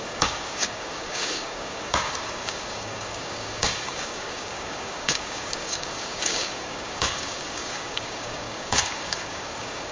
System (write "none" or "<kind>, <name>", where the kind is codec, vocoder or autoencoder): codec, DAC